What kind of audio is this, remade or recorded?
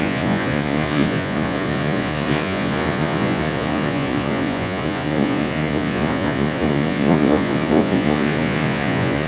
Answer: remade